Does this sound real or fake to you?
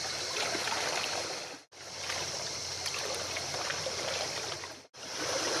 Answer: real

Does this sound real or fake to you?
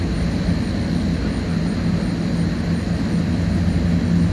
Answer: real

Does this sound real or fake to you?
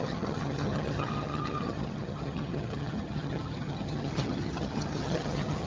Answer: fake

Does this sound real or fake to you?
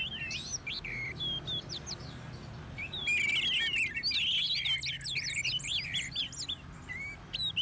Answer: real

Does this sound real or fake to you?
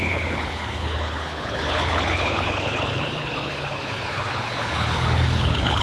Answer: fake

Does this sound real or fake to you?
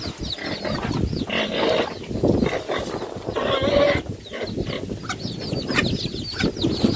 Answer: real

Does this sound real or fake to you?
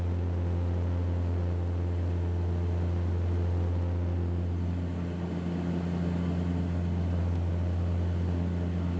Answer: real